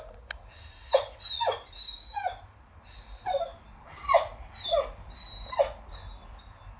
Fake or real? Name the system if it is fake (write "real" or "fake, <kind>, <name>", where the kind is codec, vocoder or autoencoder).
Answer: real